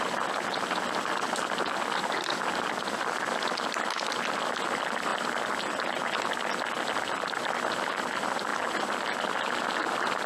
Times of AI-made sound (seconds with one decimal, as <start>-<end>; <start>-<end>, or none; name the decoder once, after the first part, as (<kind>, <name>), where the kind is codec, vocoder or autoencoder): none